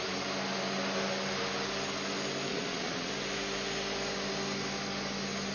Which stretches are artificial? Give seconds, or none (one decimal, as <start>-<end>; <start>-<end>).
2.5-3.1